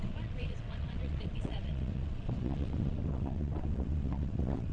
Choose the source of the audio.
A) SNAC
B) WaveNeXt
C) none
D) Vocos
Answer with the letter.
B